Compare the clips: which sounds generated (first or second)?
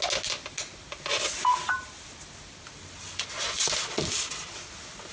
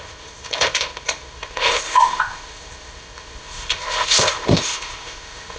second